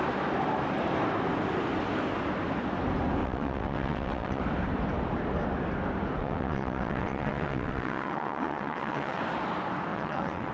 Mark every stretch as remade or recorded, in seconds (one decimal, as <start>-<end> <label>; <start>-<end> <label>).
0.0-3.2 recorded; 3.2-4.4 remade; 4.4-6.2 recorded; 6.2-9.2 remade; 9.2-9.9 recorded; 9.9-10.5 remade